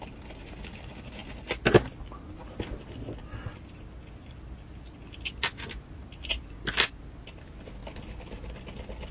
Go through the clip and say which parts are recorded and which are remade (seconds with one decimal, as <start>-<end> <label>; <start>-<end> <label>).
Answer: 0.0-9.1 recorded